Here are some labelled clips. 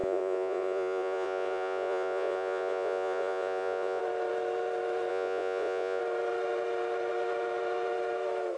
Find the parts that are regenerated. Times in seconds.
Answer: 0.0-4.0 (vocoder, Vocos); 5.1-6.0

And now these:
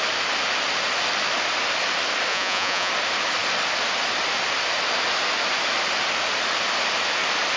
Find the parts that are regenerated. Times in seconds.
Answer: 2.3-2.9 (vocoder, Vocos)

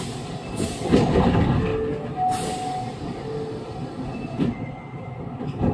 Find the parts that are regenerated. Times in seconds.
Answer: none

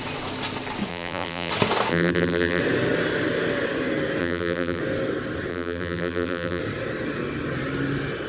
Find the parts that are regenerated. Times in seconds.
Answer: 0.9-1.5 (vocoder, BigVGAN v2); 1.9-2.6; 4.2-4.8; 5.5-6.6

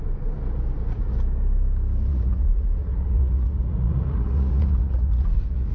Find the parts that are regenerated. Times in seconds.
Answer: 2.1-5.7 (vocoder, Vocos)

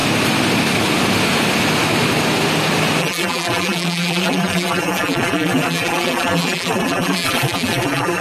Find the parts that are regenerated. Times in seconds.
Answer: 3.0-8.2 (vocoder, BigVGAN v2)

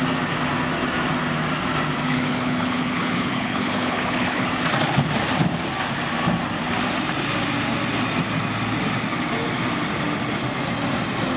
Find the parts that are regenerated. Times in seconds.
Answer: 2.1-4.5 (codec, HILCodec)